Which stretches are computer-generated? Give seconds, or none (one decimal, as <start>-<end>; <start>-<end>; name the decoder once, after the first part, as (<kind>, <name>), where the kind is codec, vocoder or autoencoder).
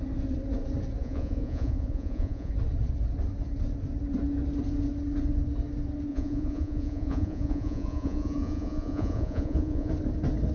1.0-2.5 (vocoder, Vocos); 6.1-9.9